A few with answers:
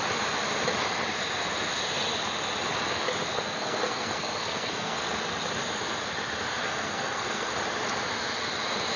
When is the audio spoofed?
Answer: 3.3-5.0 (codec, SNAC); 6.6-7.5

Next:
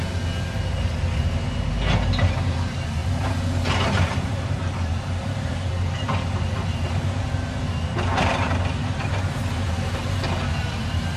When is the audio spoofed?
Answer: 3.0-5.7 (vocoder, BigVGAN v2)

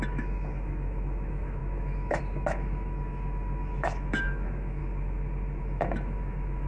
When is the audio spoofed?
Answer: 0.0-4.8 (autoencoder, DAC-VAE); 5.6-6.7

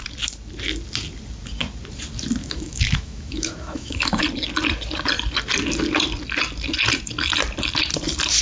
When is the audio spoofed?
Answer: 2.4-4.2 (autoencoder, DAC-VAE)

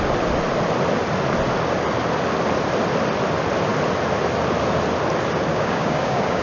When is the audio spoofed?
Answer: 5.5-6.4 (codec, DAC)

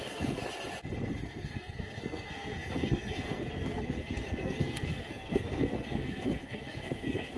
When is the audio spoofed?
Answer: 0.0-0.4 (codec, SNAC); 1.2-7.4

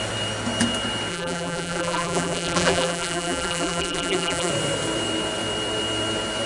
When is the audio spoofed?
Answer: 1.1-4.5 (vocoder, BigVGAN v2)

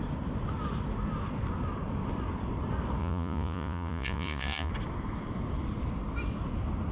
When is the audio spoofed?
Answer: 3.0-4.7 (vocoder, Vocos)